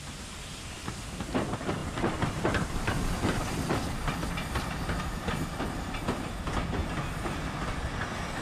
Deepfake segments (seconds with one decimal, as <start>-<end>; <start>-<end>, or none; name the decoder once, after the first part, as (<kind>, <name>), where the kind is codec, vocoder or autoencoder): 1.8-5.0 (vocoder, BigVGAN v2)